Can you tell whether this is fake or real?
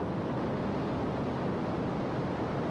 real